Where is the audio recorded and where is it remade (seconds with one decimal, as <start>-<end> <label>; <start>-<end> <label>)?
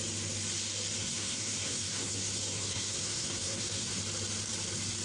0.0-1.0 recorded; 1.0-4.0 remade; 4.0-5.0 recorded